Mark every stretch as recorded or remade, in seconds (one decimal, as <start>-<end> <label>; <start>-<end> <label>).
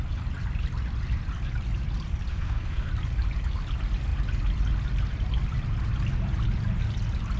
0.0-2.3 recorded; 2.3-2.9 remade; 2.9-7.4 recorded